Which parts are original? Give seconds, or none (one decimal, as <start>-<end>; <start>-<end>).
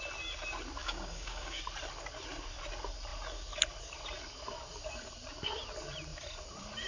0.0-0.8; 1.6-6.9